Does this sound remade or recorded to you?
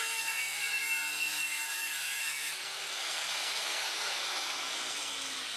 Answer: remade